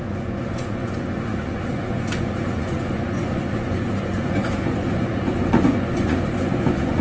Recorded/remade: remade